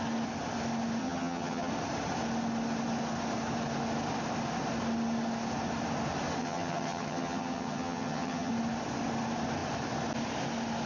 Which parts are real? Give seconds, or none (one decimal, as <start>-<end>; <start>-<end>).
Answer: 0.0-1.0; 1.7-6.4; 8.5-10.9